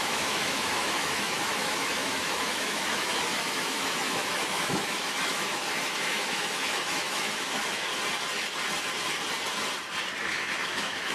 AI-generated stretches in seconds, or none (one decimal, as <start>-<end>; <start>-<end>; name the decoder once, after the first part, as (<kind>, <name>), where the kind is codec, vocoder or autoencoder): 0.0-7.9 (autoencoder, DAC-VAE); 10.2-11.1